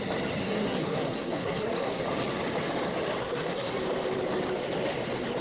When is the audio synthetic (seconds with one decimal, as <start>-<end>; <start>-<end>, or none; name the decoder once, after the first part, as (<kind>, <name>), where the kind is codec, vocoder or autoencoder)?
0.4-2.0 (codec, SNAC); 3.2-3.7